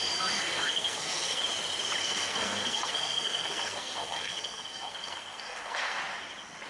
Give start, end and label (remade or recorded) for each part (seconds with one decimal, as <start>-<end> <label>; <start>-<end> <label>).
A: 0.0-1.4 remade; 1.4-2.0 recorded; 2.0-6.0 remade; 6.0-6.7 recorded